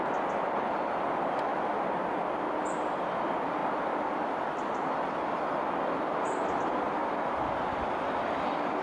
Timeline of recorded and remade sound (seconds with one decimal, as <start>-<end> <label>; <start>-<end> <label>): 0.0-8.8 recorded